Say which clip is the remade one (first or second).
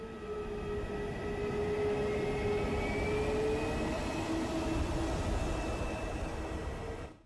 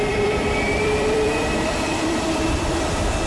second